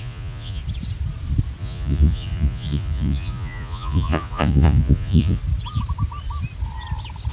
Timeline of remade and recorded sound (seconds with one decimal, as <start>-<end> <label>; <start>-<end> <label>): 0.0-0.6 remade; 0.6-1.6 recorded; 1.6-5.4 remade; 5.4-7.3 recorded